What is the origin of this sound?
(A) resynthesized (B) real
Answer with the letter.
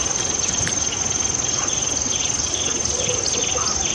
A